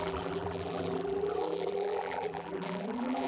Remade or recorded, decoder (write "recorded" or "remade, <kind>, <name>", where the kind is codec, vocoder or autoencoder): remade, vocoder, BigVGAN v2